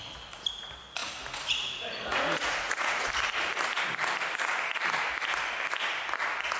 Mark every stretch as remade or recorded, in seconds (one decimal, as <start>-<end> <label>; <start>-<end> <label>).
0.0-1.0 recorded; 1.0-3.1 remade; 3.1-6.6 recorded